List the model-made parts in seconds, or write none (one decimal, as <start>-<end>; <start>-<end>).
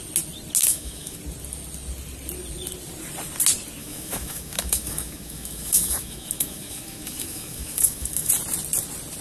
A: 0.6-1.2; 3.8-8.3